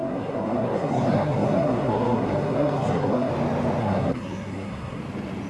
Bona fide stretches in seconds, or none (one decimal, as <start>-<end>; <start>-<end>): 3.3-3.8; 5.0-5.5

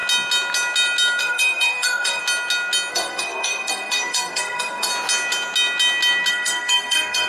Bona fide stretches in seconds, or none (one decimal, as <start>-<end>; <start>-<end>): 0.0-1.2; 2.2-2.9; 4.9-6.3

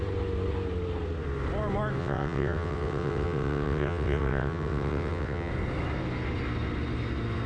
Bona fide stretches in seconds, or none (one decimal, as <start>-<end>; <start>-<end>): 0.0-2.0; 5.5-7.5

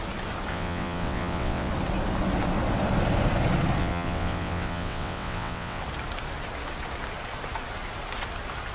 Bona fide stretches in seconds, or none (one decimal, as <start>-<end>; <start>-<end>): 0.0-0.5; 1.7-3.8; 5.8-8.7

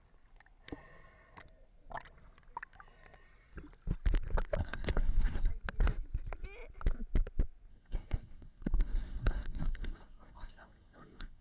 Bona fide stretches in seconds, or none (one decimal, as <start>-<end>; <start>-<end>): 0.0-4.6; 5.5-7.7